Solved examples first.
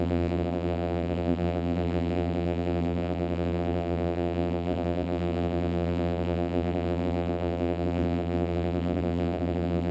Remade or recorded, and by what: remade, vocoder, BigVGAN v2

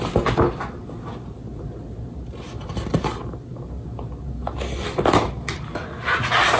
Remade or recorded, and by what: recorded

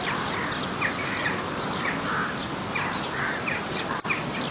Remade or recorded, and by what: recorded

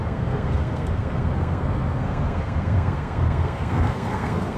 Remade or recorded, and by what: remade, codec, SNAC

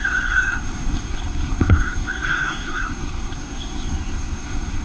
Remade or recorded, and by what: remade, codec, SNAC